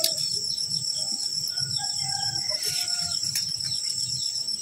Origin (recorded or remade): remade